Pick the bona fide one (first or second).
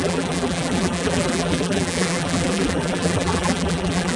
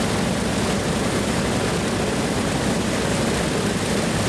second